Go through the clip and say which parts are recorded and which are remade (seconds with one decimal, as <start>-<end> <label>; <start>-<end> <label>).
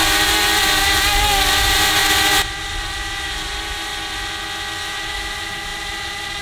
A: 0.0-1.6 recorded; 1.6-3.9 remade; 3.9-4.9 recorded; 4.9-6.4 remade